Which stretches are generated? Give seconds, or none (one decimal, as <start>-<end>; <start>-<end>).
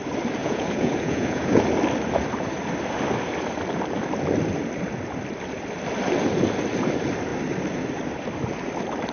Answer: 0.4-1.6